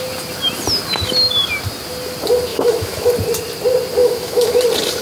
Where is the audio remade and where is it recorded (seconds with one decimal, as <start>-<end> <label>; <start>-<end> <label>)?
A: 0.0-2.5 recorded; 2.5-3.1 remade; 3.1-4.0 recorded; 4.0-4.6 remade; 4.6-5.0 recorded

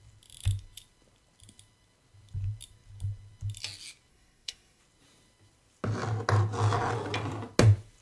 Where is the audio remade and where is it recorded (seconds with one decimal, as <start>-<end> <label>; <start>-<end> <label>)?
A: 0.0-4.1 recorded; 4.1-4.8 remade; 4.8-8.0 recorded

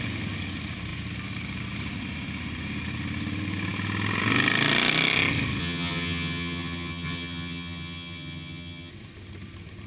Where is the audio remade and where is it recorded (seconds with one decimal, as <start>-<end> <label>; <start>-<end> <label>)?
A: 0.0-5.6 recorded; 5.6-8.9 remade; 8.9-9.9 recorded

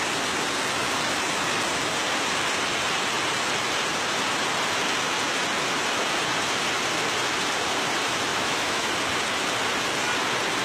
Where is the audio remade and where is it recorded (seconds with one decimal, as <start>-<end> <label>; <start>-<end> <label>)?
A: 0.0-8.3 recorded; 8.3-8.9 remade; 8.9-10.6 recorded

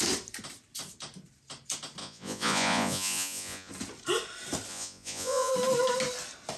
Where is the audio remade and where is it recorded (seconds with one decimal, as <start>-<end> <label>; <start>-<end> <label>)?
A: 0.0-2.0 recorded; 2.0-3.7 remade; 3.7-4.7 recorded; 4.7-5.5 remade; 5.5-6.6 recorded

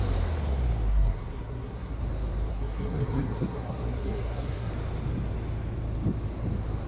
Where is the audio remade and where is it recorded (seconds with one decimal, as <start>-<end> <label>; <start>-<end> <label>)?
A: 0.0-0.9 recorded; 0.9-2.0 remade; 2.0-2.5 recorded; 2.5-4.7 remade; 4.7-6.9 recorded

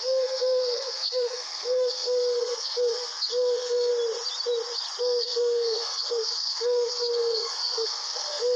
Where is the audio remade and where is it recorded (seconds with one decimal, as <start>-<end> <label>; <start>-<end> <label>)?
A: 0.0-3.9 remade; 3.9-5.0 recorded; 5.0-8.6 remade